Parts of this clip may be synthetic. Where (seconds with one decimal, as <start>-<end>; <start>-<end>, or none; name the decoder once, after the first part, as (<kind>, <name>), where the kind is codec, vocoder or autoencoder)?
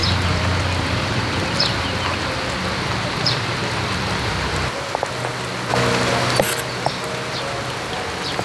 0.0-2.3 (vocoder, BigVGAN v2); 3.6-4.7